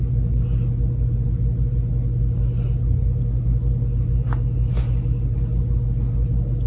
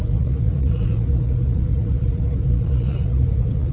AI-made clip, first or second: second